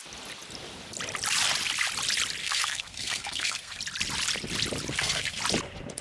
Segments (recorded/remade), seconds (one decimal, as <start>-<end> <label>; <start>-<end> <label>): 0.0-2.4 recorded; 2.4-3.8 remade; 3.8-4.9 recorded; 4.9-5.4 remade; 5.4-6.0 recorded